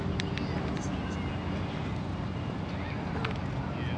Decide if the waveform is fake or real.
real